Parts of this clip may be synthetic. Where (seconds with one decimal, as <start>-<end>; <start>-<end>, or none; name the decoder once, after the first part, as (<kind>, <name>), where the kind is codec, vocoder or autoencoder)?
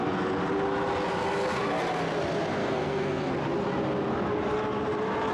2.6-3.2 (codec, SNAC)